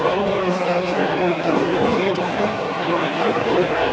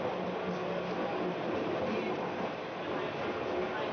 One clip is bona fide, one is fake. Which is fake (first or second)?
first